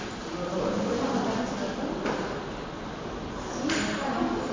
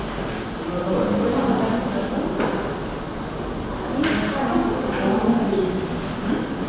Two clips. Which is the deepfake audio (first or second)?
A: first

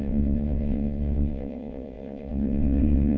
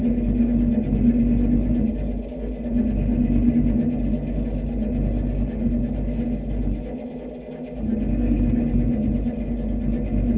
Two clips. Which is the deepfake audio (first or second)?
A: first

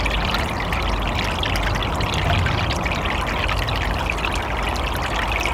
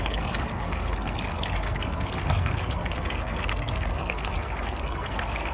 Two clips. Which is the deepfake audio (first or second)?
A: second